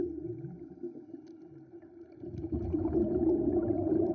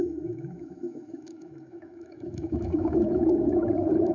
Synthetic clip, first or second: second